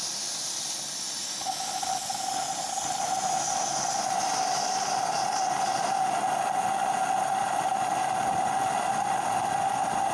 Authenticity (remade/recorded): recorded